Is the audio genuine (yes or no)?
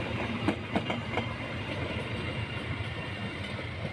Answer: yes